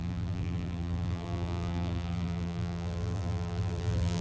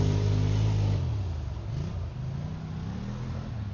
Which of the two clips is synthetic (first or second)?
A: first